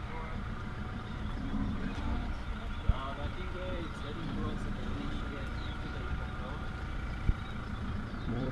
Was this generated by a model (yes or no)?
yes